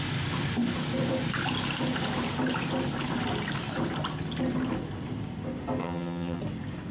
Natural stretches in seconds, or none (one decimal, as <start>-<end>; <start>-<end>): 0.0-5.8; 6.4-6.9